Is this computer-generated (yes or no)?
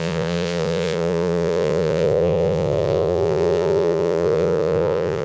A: yes